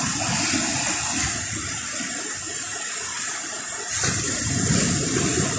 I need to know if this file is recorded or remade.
recorded